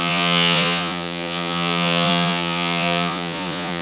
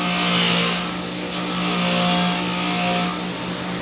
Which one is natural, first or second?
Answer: second